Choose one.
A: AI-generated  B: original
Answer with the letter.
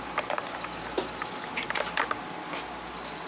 B